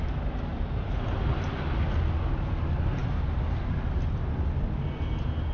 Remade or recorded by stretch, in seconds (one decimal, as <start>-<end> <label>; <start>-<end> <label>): 0.0-5.5 recorded